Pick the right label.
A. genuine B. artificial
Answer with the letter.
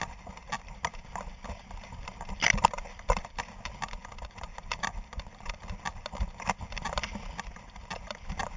A